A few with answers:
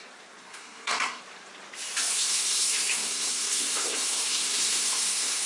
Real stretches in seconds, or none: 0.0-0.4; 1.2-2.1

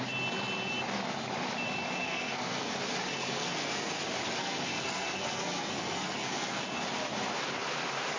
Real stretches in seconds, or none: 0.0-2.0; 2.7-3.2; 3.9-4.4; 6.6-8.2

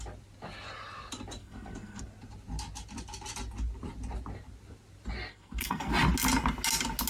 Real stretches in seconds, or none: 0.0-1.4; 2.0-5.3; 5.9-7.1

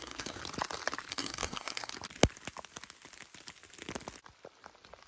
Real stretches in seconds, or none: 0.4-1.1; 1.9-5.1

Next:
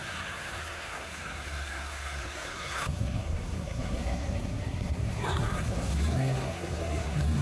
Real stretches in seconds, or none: none